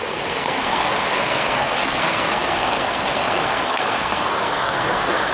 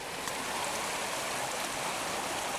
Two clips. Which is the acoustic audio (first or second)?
second